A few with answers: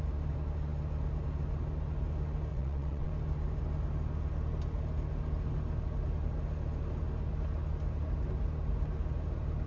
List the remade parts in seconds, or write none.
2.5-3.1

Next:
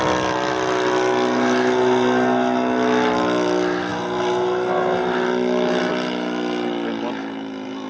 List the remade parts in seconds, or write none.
none